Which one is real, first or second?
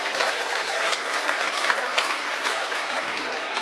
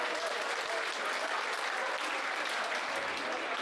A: second